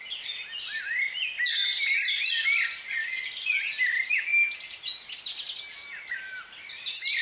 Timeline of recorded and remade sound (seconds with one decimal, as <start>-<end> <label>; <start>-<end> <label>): 0.0-7.2 recorded